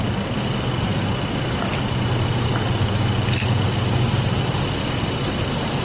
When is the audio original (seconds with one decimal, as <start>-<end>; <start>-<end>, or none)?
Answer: 0.0-5.8